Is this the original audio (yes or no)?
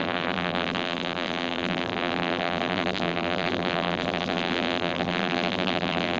no